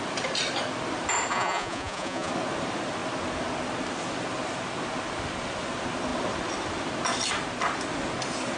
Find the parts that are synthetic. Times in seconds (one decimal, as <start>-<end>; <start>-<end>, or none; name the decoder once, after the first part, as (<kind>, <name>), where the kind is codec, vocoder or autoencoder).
1.3-2.3 (vocoder, Vocos)